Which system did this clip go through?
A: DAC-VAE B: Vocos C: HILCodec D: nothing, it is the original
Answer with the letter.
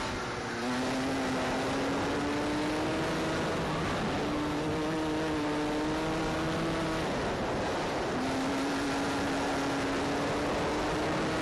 D